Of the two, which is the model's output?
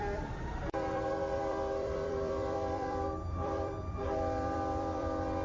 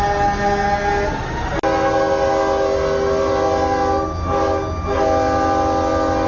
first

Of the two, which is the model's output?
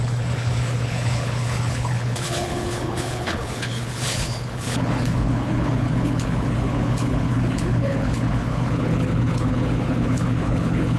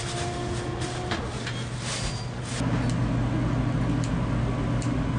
first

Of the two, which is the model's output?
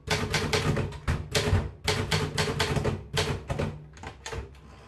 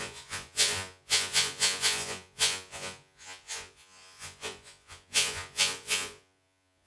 second